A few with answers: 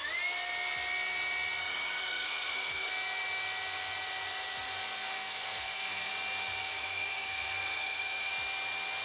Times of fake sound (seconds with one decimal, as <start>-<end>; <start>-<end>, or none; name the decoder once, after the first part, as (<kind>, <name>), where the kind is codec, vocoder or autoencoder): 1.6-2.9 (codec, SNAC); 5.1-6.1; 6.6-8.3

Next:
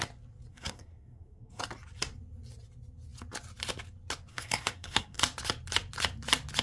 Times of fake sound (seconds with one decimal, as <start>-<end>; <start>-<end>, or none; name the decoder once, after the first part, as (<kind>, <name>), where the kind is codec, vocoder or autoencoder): 0.5-1.6 (codec, SNAC); 4.3-5.2

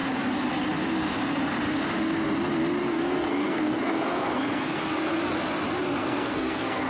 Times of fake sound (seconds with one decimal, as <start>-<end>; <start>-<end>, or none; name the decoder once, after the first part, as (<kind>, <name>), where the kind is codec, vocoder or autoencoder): 2.8-4.8 (codec, SNAC); 6.0-6.9

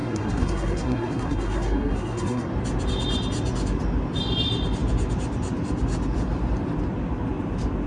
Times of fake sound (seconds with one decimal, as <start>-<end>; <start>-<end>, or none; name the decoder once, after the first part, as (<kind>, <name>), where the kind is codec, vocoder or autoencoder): 0.0-2.5 (codec, SNAC)

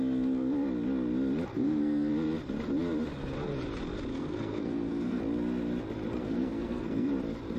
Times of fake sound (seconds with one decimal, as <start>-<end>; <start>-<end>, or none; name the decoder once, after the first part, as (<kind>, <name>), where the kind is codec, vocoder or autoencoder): 1.5-2.1 (codec, SNAC); 4.1-5.2; 6.2-7.1

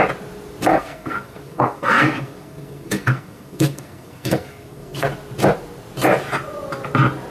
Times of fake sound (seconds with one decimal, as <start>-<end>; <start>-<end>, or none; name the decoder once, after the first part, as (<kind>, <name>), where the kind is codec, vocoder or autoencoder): 0.7-5.1 (codec, SNAC)